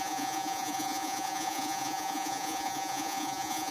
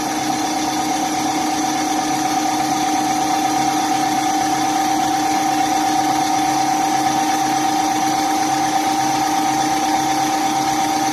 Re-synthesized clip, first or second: first